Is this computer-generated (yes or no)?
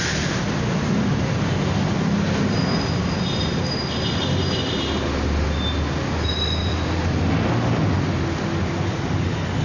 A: no